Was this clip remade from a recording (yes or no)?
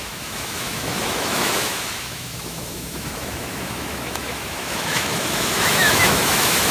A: yes